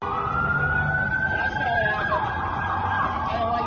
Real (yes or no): yes